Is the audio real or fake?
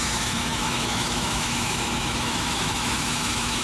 fake